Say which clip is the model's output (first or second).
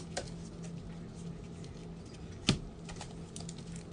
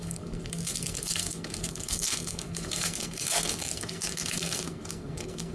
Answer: second